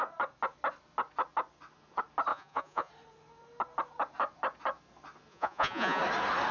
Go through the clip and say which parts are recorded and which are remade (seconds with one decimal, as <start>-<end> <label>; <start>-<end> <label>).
0.0-2.3 recorded; 2.3-2.9 remade; 2.9-5.3 recorded; 5.3-6.0 remade; 6.0-6.5 recorded